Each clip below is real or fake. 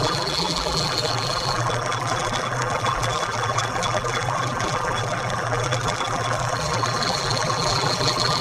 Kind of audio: fake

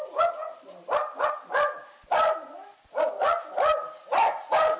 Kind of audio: real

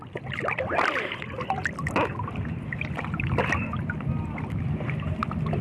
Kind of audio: fake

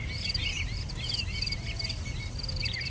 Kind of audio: fake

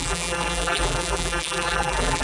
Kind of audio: fake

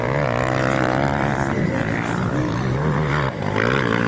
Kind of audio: real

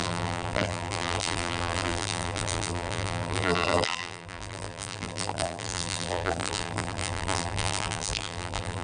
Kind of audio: fake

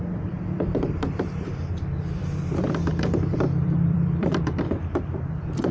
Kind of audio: fake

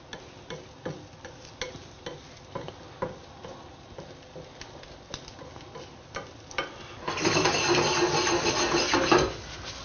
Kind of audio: real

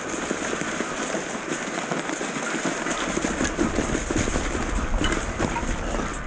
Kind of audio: real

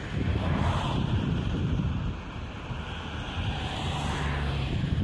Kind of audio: fake